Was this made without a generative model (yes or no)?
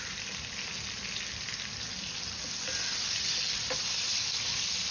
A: yes